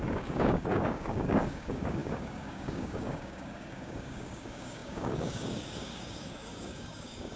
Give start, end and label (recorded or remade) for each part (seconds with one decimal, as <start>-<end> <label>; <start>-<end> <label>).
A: 0.0-7.4 remade